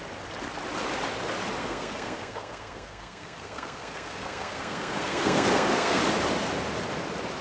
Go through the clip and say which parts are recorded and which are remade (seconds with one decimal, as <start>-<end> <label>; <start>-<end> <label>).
0.0-1.6 recorded; 1.6-6.0 remade; 6.0-7.4 recorded